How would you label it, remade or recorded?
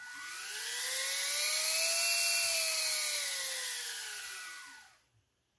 recorded